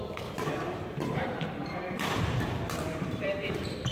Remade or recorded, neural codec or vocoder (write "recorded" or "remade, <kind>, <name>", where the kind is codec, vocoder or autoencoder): remade, vocoder, BigVGAN v2